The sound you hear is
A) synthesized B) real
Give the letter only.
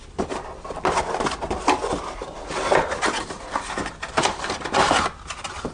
B